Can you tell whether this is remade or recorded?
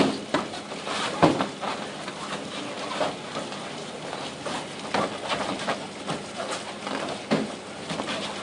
recorded